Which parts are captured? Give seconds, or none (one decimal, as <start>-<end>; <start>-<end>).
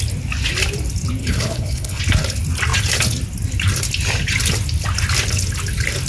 0.0-1.2; 2.0-6.1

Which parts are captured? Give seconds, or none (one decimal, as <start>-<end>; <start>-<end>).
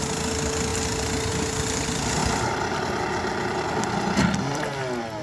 0.0-5.2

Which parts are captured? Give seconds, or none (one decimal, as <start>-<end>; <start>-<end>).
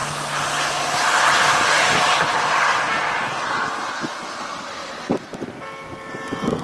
0.0-6.6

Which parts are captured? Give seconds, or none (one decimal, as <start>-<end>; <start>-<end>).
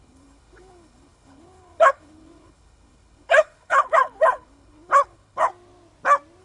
5.5-6.4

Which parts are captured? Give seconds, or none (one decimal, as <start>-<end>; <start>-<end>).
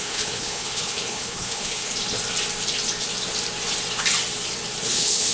1.9-4.8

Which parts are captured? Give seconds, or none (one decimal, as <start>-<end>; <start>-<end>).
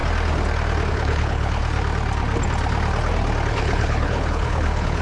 0.0-0.9; 1.6-3.5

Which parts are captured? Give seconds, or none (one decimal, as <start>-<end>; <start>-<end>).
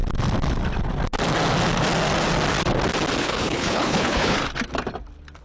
0.0-3.2; 4.4-5.4